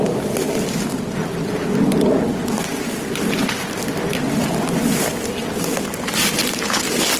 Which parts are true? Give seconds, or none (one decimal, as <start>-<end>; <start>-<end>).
0.0-7.2